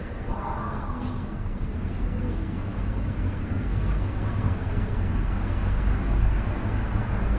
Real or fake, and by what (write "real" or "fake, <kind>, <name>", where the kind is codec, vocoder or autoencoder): fake, codec, SNAC